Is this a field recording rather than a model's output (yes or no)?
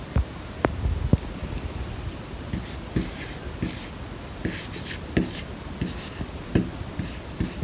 yes